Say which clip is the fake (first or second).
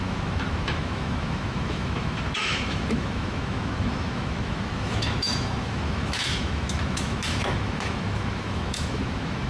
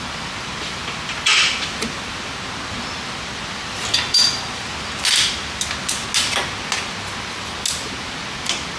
first